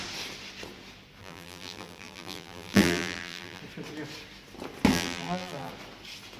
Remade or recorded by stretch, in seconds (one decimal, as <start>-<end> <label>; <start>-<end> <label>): 0.0-1.2 recorded; 1.2-3.6 remade; 3.6-4.9 recorded; 4.9-5.7 remade; 5.7-6.4 recorded

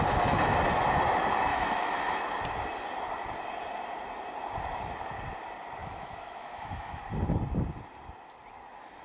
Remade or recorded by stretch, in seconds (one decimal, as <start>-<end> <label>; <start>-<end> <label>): 0.0-1.5 recorded; 1.5-2.2 remade; 2.2-5.8 recorded; 5.8-7.0 remade; 7.0-9.0 recorded